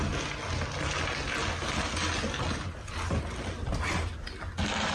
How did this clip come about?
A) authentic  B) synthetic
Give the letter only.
A